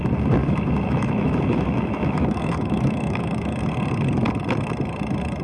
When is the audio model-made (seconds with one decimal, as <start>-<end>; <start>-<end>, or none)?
0.4-3.6